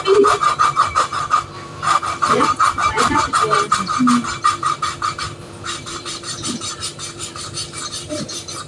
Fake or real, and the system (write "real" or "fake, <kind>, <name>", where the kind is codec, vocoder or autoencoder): fake, vocoder, BigVGAN v2